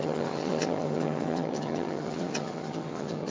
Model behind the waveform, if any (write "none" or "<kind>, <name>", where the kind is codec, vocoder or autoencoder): vocoder, HiFi-GAN